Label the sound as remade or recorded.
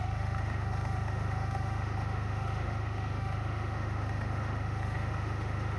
remade